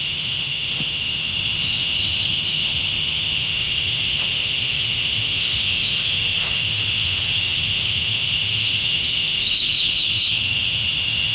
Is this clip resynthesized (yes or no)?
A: yes